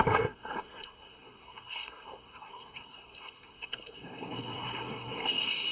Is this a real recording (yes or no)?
no